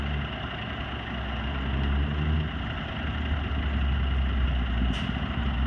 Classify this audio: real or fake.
real